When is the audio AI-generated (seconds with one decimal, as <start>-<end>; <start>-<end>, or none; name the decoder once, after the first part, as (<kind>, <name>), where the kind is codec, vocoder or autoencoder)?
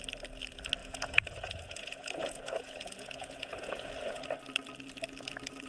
0.8-4.2 (vocoder, Vocos)